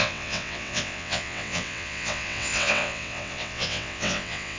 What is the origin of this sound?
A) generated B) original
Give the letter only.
A